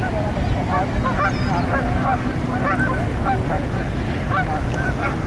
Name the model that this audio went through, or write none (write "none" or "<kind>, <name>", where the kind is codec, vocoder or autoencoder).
none